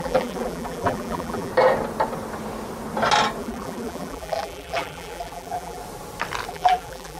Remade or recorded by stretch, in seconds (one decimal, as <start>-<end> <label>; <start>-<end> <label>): 0.0-1.5 remade; 1.5-3.4 recorded; 3.4-5.8 remade; 5.8-6.5 recorded; 6.5-7.2 remade